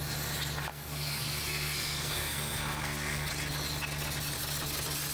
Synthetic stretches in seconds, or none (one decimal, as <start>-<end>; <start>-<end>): 0.7-3.3